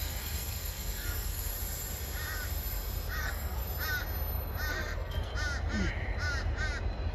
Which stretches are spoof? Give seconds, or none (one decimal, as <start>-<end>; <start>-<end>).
0.0-1.5; 3.2-3.6; 4.7-5.3